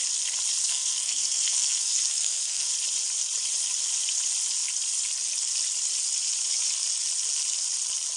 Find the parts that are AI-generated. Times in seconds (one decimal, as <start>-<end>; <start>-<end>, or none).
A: 0.6-2.7